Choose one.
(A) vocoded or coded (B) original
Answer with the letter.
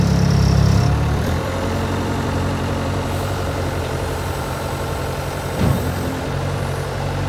A